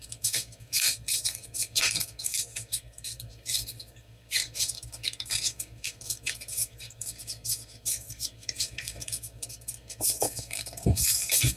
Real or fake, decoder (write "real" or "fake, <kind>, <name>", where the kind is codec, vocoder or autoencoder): fake, codec, SNAC